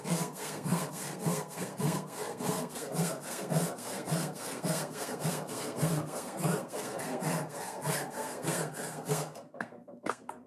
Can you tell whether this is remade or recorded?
remade